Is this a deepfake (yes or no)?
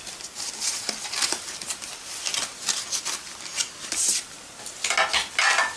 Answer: no